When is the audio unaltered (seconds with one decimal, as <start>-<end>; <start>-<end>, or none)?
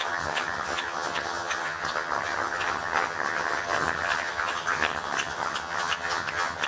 none